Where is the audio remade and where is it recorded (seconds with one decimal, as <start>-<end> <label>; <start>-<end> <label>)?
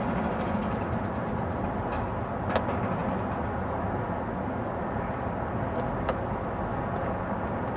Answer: 0.0-7.8 recorded